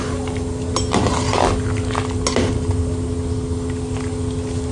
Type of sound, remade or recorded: recorded